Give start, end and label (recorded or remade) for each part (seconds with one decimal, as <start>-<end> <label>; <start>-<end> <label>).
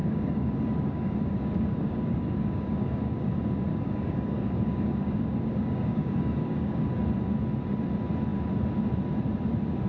0.0-3.3 remade; 3.3-3.7 recorded; 3.7-7.0 remade; 7.0-9.9 recorded